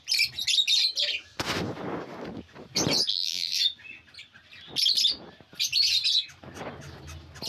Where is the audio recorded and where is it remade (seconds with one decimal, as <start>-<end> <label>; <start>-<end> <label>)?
0.0-3.1 recorded; 3.1-3.6 remade; 3.6-7.5 recorded